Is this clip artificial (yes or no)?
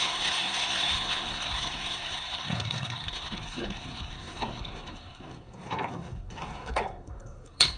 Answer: yes